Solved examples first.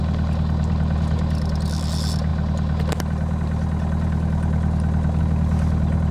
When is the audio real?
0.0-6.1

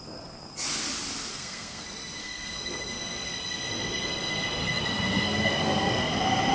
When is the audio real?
0.0-1.3; 1.8-2.2; 6.1-6.5

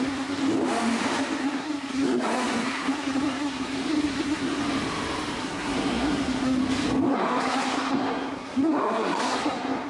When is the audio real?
0.4-1.4; 4.6-5.4; 6.6-7.1

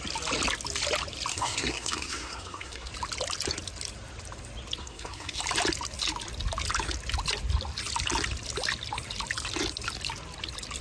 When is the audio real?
0.0-1.3; 2.9-4.8; 5.4-10.8

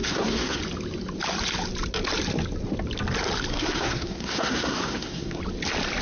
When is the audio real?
0.6-3.5; 5.4-6.0